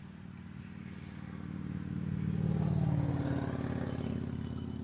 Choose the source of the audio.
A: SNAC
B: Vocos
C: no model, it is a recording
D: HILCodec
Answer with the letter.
C